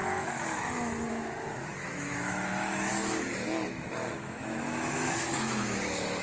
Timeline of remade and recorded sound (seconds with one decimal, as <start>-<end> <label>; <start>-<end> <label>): 0.0-6.2 remade